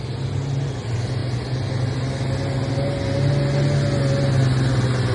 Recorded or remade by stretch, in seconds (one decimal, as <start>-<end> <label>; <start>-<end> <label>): 0.0-5.1 recorded